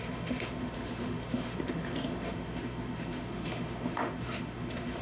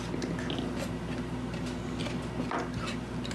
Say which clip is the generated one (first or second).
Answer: first